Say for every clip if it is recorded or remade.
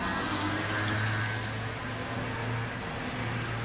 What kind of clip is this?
recorded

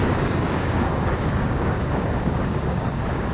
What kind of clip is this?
remade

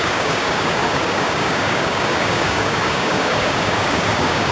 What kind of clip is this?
remade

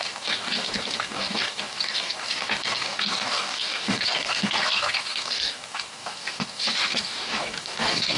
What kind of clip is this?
remade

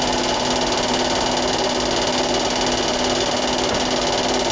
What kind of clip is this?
recorded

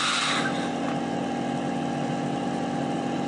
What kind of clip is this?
recorded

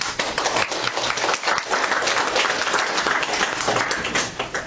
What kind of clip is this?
recorded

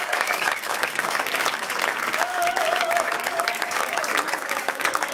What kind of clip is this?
remade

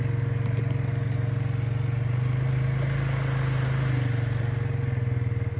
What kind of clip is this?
recorded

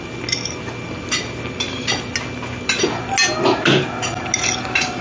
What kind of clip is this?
recorded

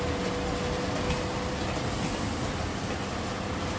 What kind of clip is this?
recorded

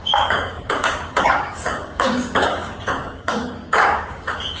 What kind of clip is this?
remade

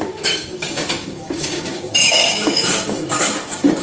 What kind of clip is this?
remade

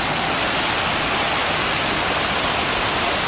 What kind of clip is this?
recorded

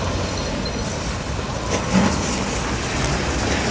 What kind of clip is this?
recorded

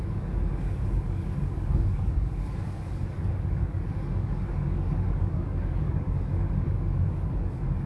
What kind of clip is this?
remade